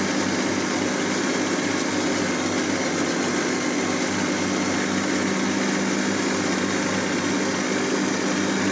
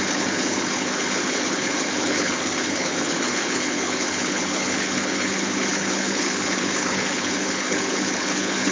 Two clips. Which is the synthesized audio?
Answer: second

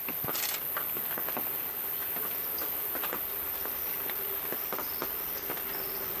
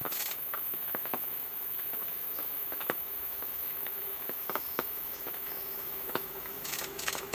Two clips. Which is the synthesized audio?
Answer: second